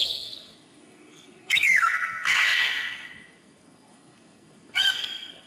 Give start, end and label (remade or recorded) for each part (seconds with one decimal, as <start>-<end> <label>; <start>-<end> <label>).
0.0-5.5 remade